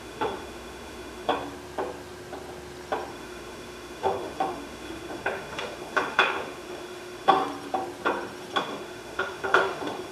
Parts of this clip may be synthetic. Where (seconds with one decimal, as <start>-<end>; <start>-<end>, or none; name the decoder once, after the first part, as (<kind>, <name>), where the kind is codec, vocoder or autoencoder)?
0.0-1.3 (autoencoder, DAC-VAE); 3.1-7.4; 8.6-10.1